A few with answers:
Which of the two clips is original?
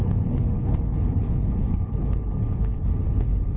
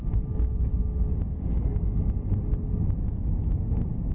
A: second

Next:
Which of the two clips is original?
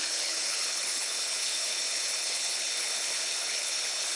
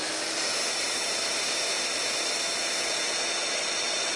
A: second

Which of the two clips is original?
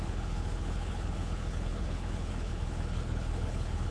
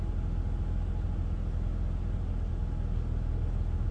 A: second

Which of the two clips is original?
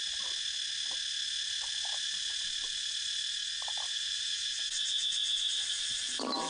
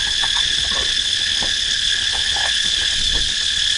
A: first